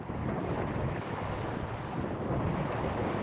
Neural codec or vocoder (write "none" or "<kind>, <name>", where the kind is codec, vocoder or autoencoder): none